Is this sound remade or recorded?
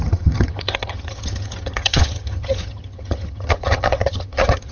remade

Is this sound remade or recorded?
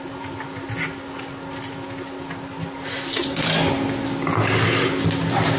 recorded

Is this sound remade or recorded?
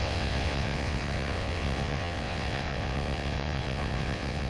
remade